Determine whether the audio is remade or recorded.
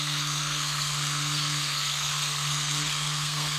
remade